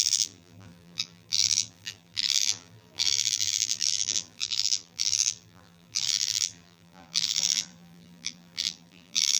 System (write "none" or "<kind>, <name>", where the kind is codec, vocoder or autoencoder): vocoder, BigVGAN v2